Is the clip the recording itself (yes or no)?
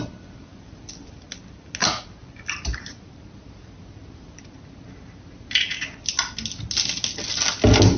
yes